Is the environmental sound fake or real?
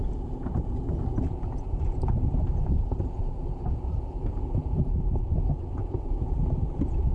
fake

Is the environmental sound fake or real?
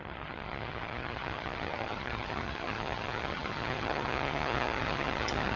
fake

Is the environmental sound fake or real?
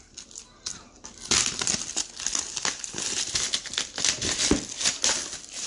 real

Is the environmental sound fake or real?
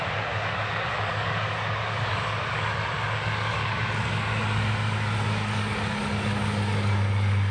fake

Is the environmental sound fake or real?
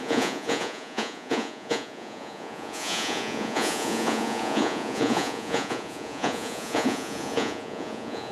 fake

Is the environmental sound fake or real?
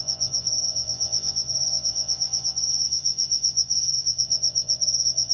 fake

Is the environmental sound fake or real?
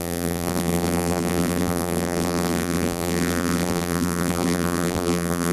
fake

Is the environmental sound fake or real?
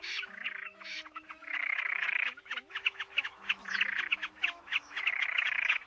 fake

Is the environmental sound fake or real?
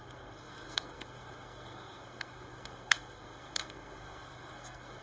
fake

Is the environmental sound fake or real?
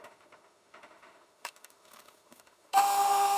fake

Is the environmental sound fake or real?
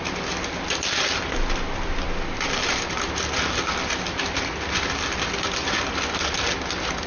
real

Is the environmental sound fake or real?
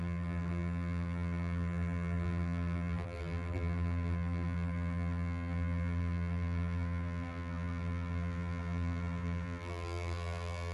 fake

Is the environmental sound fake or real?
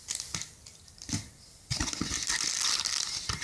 real